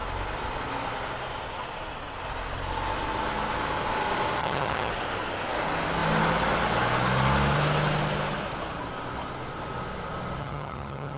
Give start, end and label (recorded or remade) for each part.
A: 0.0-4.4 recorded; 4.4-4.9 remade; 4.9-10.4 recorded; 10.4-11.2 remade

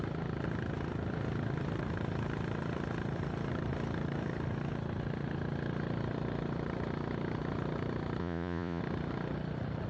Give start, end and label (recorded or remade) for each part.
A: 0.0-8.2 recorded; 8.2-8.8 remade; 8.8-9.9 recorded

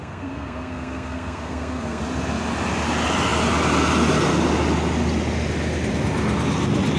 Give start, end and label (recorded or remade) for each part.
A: 0.0-2.0 remade; 2.0-7.0 recorded